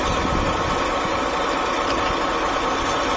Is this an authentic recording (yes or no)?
yes